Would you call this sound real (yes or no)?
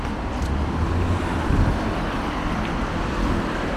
yes